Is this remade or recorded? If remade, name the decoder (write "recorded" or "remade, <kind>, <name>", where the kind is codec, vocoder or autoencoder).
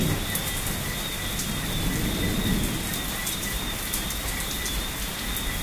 recorded